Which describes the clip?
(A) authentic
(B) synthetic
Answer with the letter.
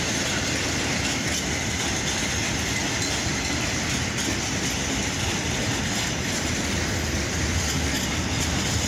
A